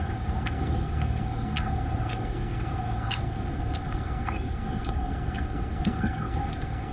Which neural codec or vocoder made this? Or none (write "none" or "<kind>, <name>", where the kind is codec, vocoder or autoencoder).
codec, SNAC